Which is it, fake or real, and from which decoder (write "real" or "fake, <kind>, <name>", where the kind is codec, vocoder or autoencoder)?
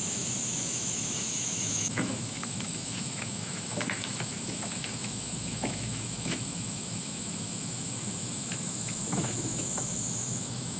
fake, autoencoder, DAC-VAE